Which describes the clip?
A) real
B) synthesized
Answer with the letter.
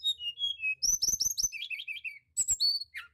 A